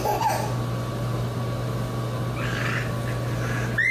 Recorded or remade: recorded